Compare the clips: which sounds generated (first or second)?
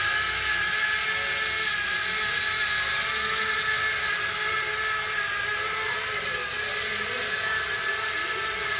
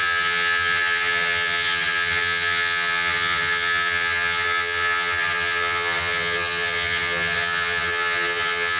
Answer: second